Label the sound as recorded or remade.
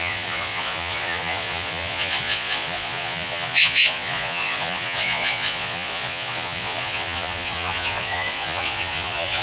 remade